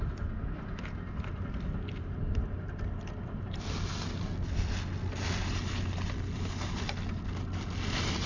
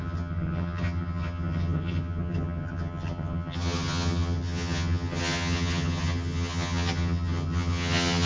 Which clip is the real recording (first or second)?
first